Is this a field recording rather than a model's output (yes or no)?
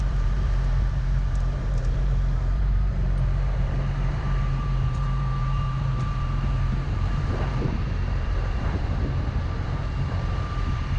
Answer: no